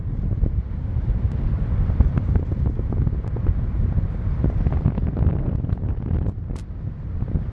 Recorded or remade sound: recorded